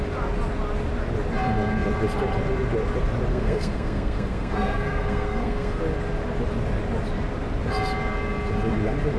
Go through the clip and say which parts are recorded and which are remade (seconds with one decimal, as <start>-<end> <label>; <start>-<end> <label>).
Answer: 0.0-3.3 recorded; 3.3-5.8 remade; 5.8-9.2 recorded